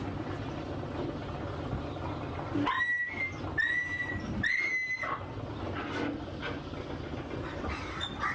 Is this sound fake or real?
real